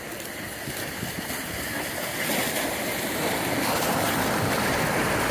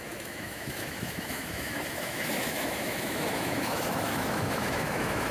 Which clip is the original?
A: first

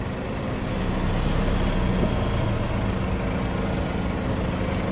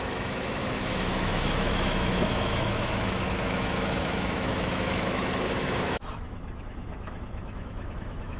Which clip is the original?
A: first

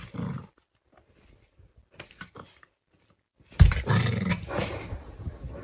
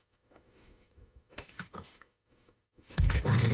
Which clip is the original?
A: first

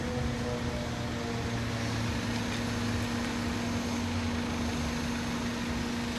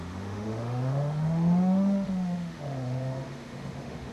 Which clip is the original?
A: first